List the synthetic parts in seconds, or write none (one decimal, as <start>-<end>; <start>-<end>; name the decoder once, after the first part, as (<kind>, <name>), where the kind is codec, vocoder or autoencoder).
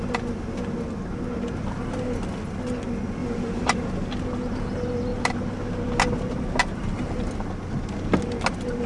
3.2-3.7 (vocoder, BigVGAN v2); 5.1-5.8